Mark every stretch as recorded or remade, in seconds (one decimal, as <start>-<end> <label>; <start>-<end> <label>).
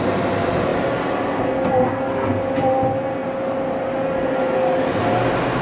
0.0-5.6 recorded